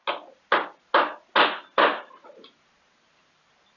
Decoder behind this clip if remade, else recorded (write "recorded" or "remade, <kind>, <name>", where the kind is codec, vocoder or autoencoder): recorded